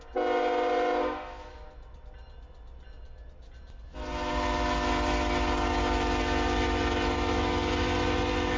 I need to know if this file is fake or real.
real